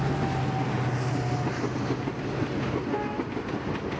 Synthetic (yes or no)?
no